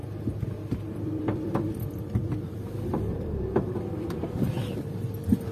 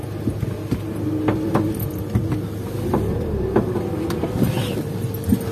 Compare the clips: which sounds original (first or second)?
second